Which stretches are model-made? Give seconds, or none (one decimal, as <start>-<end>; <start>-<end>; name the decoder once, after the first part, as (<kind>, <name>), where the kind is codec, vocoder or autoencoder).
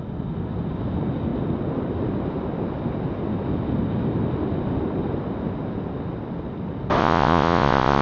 7.0-8.0 (vocoder, Vocos)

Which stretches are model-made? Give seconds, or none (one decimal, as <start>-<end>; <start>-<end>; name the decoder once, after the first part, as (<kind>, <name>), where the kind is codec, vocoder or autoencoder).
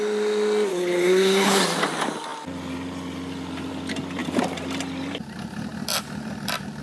0.7-1.6 (codec, HILCodec)